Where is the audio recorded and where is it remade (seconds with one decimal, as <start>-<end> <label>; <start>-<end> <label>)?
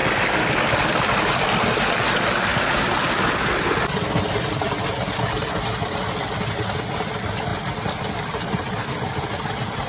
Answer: 0.0-2.5 recorded; 2.5-3.2 remade; 3.2-9.9 recorded